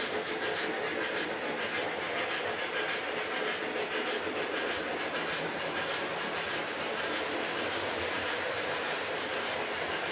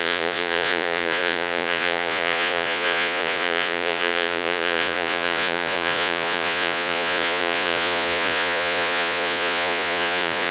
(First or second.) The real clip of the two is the first